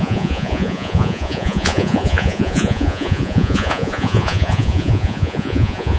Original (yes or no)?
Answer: no